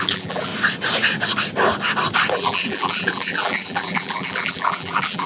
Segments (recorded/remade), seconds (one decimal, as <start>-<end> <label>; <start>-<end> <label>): 0.0-0.5 remade; 0.5-2.3 recorded; 2.3-5.3 remade